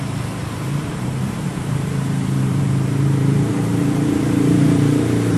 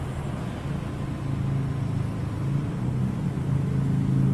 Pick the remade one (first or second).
first